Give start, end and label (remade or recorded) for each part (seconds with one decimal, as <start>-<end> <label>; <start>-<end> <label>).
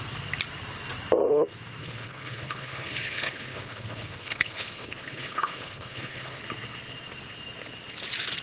0.0-1.8 recorded; 1.8-6.4 remade; 6.4-8.4 recorded